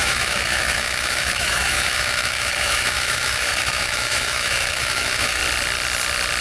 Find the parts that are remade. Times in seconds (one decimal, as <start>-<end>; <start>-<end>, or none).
0.0-5.4

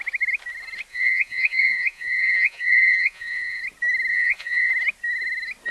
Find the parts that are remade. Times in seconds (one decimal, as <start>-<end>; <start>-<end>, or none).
0.9-3.6; 4.1-4.7

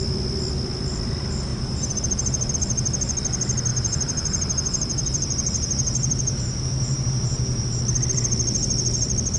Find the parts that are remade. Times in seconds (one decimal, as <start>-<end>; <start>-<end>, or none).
1.5-2.5; 3.7-7.8

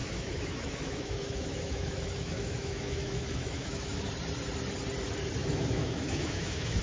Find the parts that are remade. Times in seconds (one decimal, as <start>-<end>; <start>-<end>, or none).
0.0-4.1; 5.4-6.8